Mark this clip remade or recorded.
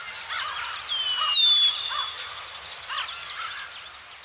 recorded